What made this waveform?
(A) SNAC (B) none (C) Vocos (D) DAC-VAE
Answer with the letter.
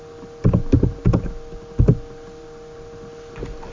B